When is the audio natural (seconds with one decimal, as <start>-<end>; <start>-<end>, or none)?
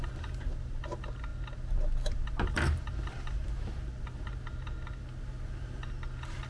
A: 0.0-6.5